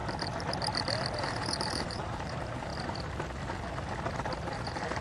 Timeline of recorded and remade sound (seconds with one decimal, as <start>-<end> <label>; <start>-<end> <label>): 0.0-1.2 recorded; 1.2-2.7 remade; 2.7-4.5 recorded; 4.5-5.0 remade